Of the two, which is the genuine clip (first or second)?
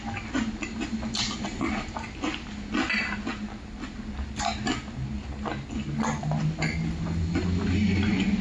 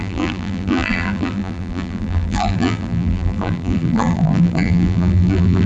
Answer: first